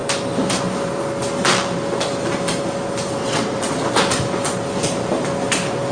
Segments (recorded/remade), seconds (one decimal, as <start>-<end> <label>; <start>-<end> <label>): 0.0-3.2 recorded; 3.2-3.8 remade; 3.8-5.9 recorded